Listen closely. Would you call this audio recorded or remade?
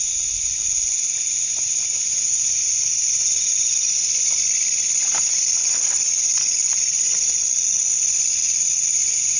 recorded